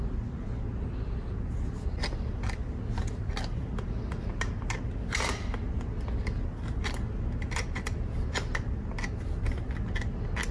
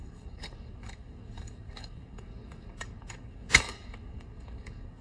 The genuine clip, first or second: first